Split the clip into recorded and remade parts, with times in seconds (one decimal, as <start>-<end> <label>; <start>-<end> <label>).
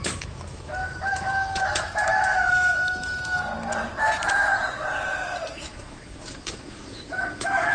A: 0.0-3.5 remade; 3.5-4.0 recorded; 4.0-4.5 remade; 4.5-5.5 recorded; 5.5-7.7 remade